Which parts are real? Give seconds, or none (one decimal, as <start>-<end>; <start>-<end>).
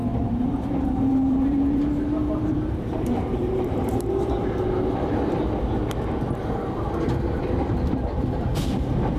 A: 4.3-9.2